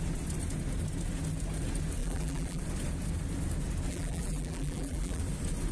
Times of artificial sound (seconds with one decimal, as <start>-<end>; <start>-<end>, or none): 2.0-2.6; 3.9-5.2